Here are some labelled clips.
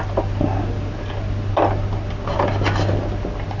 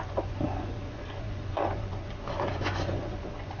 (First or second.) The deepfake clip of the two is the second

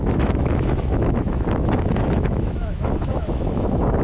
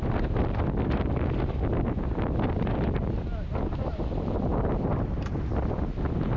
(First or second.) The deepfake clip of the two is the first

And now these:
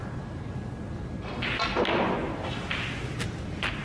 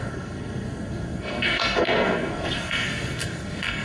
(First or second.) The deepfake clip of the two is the second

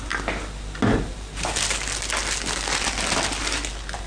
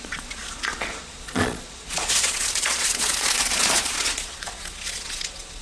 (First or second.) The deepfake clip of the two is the second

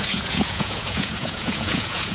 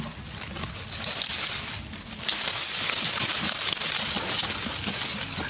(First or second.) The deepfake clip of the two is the first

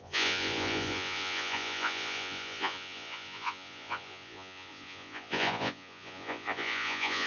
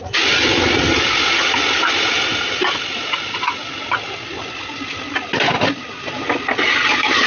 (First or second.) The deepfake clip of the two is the first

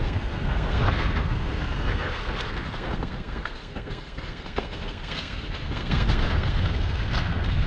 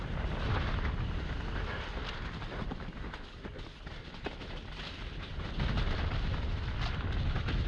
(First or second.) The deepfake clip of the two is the first